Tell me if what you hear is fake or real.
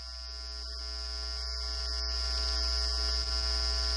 real